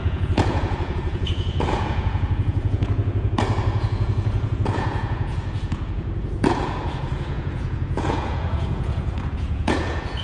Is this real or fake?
fake